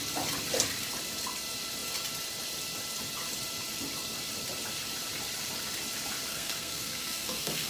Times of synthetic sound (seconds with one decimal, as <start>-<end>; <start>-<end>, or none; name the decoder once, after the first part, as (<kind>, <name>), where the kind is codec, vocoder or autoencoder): 6.3-7.7 (codec, SNAC)